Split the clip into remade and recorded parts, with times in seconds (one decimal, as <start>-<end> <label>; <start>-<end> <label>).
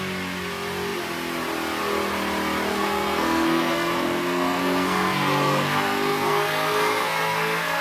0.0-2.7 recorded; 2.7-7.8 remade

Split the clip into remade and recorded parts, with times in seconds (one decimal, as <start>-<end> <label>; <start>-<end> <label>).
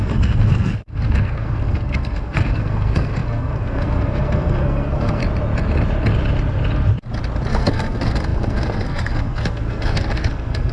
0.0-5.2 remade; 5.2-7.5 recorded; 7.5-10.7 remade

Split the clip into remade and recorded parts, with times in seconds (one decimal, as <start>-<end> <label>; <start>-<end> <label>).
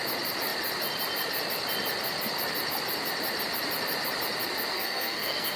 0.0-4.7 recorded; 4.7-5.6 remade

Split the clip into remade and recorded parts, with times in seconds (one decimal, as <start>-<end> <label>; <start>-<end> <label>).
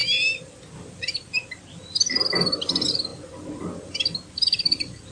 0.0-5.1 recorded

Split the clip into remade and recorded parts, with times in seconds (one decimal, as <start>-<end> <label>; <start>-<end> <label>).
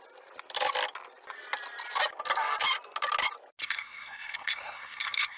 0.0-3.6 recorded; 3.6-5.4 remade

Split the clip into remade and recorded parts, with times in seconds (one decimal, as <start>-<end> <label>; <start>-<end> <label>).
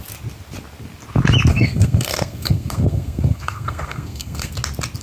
0.0-1.5 recorded; 1.5-4.5 remade; 4.5-5.0 recorded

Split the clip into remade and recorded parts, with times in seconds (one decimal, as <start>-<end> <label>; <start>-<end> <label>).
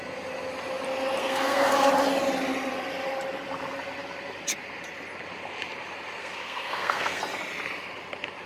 0.0-1.2 recorded; 1.2-1.9 remade; 1.9-6.2 recorded; 6.2-7.2 remade; 7.2-8.5 recorded